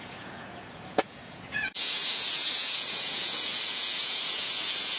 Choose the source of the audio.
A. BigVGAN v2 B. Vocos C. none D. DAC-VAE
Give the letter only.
B